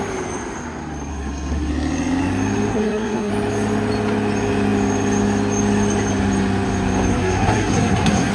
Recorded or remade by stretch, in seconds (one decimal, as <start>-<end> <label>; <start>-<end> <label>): 0.0-1.1 recorded; 1.1-1.7 remade; 1.7-2.7 recorded; 2.7-3.3 remade; 3.3-7.1 recorded; 7.1-8.3 remade

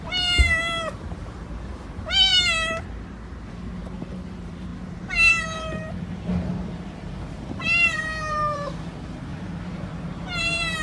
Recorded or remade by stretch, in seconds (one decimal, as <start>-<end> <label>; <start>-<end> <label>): 0.0-2.3 remade; 2.3-3.5 recorded; 3.5-4.7 remade; 4.7-5.3 recorded; 5.3-10.8 remade

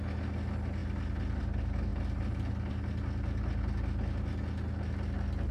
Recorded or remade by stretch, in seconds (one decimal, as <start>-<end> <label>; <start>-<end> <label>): 0.0-5.5 recorded